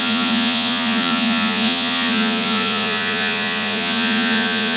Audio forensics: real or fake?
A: fake